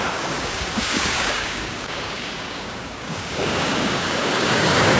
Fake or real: fake